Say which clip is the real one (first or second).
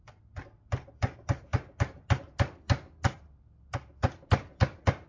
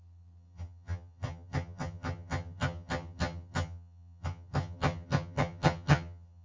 first